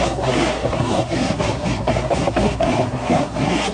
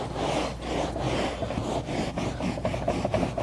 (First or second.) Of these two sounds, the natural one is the second